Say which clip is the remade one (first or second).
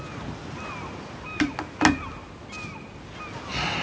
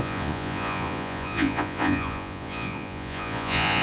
second